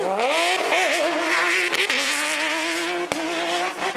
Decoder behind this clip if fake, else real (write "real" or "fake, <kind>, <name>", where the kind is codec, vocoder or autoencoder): real